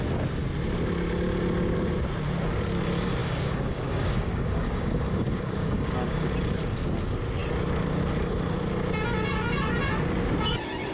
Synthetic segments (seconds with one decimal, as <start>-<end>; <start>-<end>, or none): 3.2-6.3